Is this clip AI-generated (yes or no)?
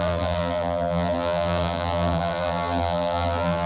yes